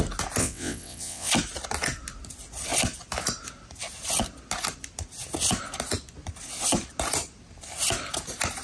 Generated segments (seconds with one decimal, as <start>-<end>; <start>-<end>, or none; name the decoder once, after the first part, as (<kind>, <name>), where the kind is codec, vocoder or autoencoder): 0.4-1.3 (vocoder, WaveNeXt)